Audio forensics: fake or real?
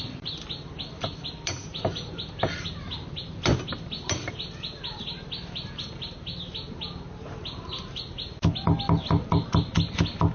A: real